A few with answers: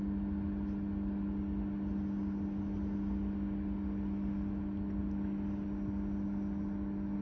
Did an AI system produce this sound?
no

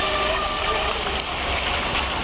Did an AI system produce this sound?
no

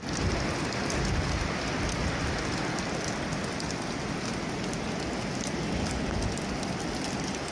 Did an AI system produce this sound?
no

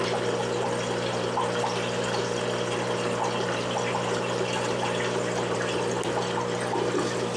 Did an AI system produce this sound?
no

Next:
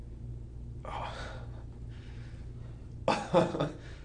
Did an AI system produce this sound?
no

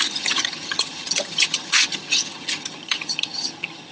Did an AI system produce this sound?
yes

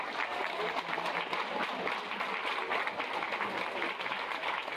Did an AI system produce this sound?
no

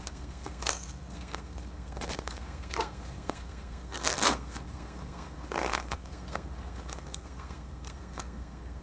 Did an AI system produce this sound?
yes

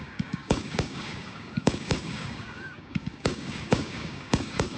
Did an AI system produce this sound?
yes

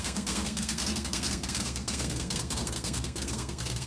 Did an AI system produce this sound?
yes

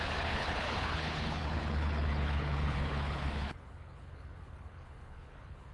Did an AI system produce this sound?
yes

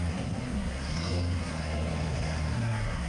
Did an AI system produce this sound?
yes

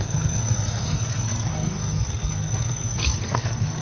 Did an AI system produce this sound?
yes